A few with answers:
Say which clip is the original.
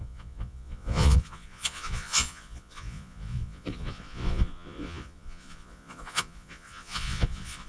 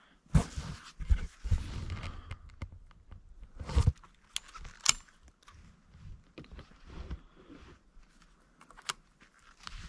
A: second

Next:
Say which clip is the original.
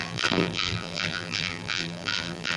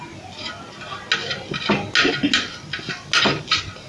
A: second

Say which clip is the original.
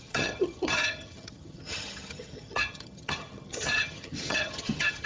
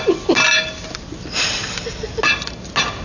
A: second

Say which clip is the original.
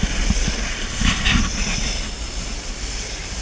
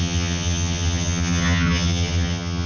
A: first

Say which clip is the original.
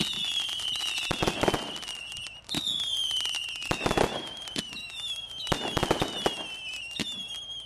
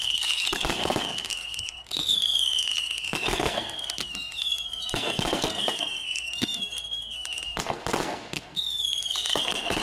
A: first